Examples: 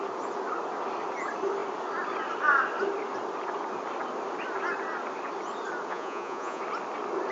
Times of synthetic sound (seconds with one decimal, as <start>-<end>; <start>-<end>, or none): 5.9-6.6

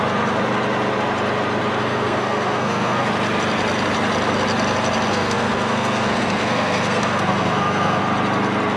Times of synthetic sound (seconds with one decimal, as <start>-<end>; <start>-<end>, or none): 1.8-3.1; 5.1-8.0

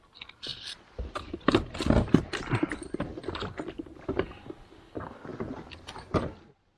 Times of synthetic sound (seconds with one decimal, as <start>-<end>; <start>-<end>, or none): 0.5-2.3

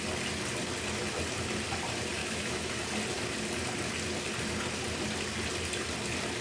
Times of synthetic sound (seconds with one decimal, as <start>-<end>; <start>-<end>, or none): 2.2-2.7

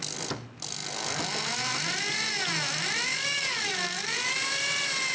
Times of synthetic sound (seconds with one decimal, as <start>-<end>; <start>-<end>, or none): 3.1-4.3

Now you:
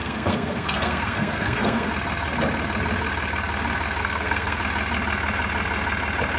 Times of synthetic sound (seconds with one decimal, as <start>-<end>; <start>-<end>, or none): 0.0-1.9; 4.0-4.6

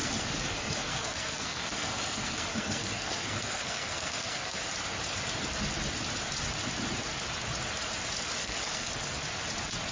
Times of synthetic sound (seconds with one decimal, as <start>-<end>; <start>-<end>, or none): 0.0-4.7; 8.4-8.9

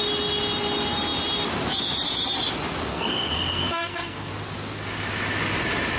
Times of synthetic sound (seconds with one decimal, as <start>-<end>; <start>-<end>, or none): 2.9-4.3